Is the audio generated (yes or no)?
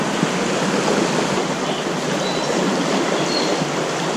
no